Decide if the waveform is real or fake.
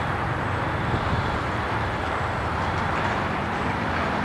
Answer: fake